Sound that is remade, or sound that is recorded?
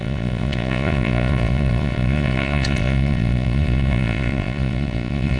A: remade